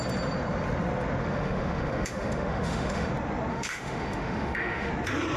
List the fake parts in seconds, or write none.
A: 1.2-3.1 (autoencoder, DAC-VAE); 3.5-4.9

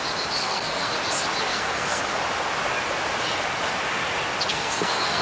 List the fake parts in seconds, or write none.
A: 0.4-0.9 (codec, SNAC); 1.5-2.0; 4.5-5.2

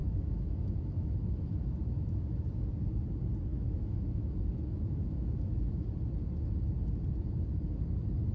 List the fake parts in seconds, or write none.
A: 0.0-2.7 (autoencoder, DAC-VAE); 3.5-5.8

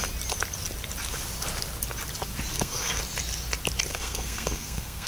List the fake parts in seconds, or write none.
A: 2.5-3.0 (codec, SNAC); 3.9-5.1

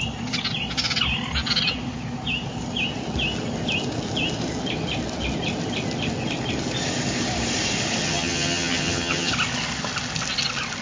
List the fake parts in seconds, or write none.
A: 8.0-9.3 (vocoder, HiFi-GAN)